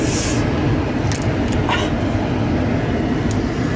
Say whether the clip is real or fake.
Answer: real